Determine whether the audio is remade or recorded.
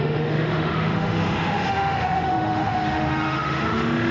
remade